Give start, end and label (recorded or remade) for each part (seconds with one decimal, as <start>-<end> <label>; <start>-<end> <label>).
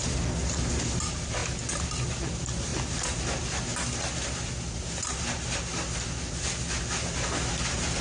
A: 0.0-8.0 recorded